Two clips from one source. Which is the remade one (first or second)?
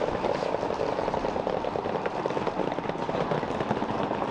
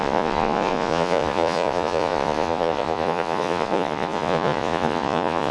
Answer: second